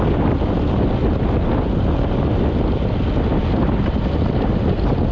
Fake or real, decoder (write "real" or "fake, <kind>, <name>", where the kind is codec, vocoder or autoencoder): real